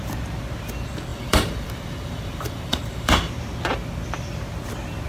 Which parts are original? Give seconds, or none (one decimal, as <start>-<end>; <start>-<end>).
0.0-1.1; 3.3-5.1